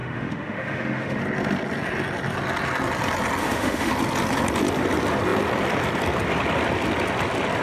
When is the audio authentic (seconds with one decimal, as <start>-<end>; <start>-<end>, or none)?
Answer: 1.2-3.4; 3.9-7.6